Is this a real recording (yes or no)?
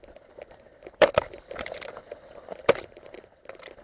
no